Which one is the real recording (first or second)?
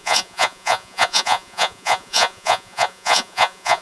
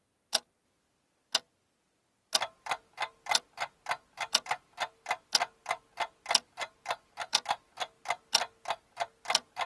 second